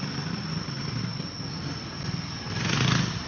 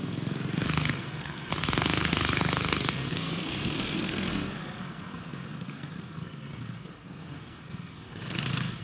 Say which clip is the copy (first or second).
second